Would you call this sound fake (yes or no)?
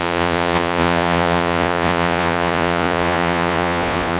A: yes